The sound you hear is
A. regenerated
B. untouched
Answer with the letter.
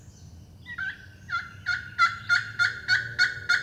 B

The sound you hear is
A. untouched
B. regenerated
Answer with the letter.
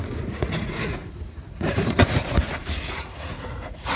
B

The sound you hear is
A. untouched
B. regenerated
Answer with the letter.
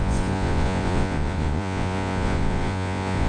B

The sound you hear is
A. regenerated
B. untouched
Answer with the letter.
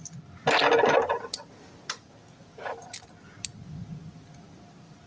B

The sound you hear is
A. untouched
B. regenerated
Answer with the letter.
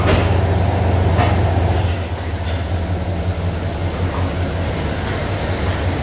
A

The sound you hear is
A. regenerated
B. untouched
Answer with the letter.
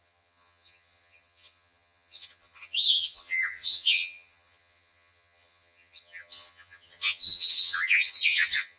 A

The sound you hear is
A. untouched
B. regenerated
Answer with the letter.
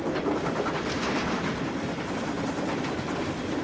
A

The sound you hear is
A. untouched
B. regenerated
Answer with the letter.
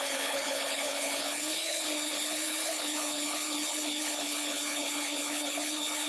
B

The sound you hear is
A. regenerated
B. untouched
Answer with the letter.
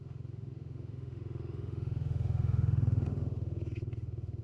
A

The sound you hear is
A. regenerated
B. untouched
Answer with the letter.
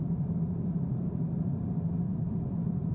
A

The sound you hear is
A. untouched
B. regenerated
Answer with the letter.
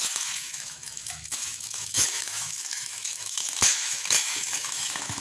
B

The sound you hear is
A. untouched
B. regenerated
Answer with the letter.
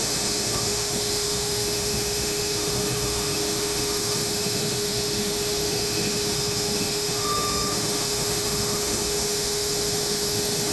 B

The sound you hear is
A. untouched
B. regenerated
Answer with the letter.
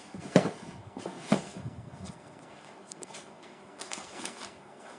B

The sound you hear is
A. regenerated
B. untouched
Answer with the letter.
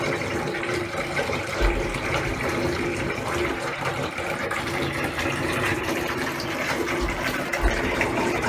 A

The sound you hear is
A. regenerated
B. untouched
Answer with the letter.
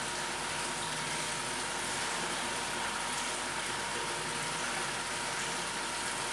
B